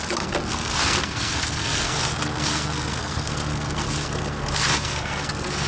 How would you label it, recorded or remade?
remade